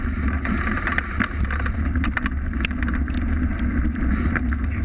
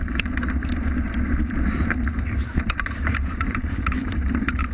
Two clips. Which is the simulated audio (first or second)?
second